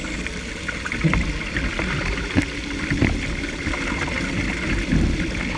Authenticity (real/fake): real